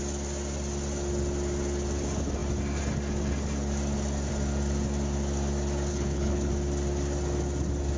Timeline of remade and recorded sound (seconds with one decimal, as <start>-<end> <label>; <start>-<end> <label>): 0.0-5.9 recorded; 5.9-6.5 remade; 6.5-8.0 recorded